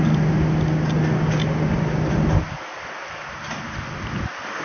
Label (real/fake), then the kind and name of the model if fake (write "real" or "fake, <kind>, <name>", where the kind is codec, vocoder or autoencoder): real